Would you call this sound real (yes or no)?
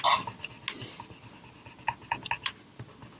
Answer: yes